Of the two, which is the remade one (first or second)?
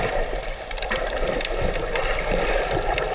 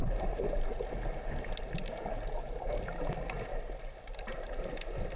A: first